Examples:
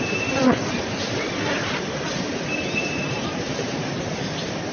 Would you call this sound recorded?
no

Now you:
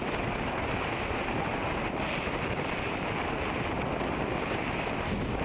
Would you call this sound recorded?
yes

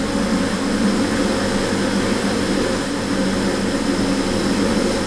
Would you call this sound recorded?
yes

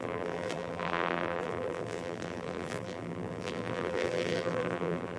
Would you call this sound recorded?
no